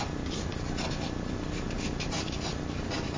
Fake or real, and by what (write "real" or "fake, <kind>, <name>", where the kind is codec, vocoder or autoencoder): real